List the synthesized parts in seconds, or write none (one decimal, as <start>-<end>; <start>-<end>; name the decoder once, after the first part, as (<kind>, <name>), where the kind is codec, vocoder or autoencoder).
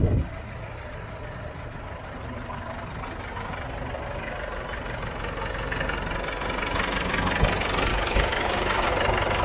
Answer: 7.9-8.9 (codec, DAC)